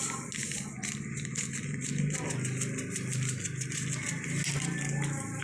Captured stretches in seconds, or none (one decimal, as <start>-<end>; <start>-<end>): 0.0-5.4